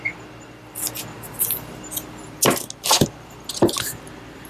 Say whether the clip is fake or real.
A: real